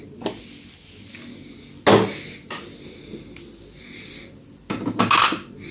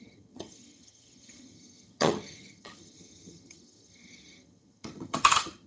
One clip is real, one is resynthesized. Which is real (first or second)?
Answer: first